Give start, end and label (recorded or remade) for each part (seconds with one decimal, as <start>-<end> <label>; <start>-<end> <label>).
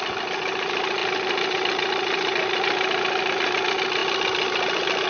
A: 0.0-1.0 recorded; 1.0-3.5 remade; 3.5-5.1 recorded